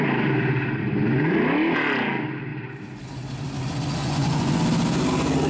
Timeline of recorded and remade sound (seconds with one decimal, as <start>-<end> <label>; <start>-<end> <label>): 0.0-4.0 recorded; 4.0-4.6 remade; 4.6-5.5 recorded